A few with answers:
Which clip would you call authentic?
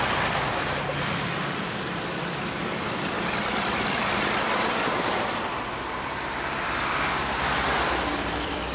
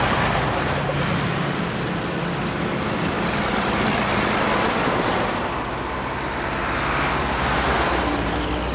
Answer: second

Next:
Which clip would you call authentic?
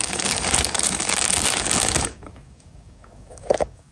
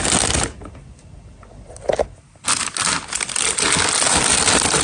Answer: second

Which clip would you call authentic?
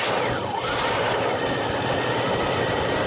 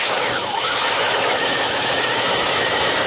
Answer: first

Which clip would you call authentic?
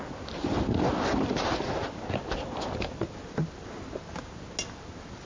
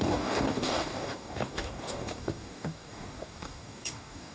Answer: first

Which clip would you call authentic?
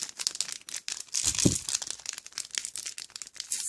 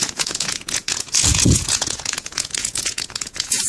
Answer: first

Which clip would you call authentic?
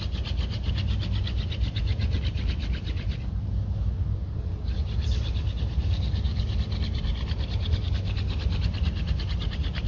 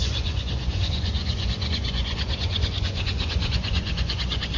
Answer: first